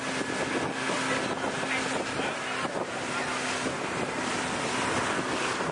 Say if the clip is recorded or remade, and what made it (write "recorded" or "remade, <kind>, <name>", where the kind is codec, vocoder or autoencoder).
recorded